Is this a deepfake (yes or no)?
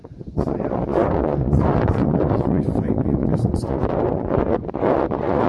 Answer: yes